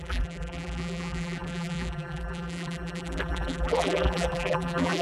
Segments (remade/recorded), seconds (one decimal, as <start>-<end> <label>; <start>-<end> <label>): 0.0-5.0 remade